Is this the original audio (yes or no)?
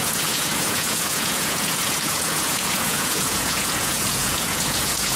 no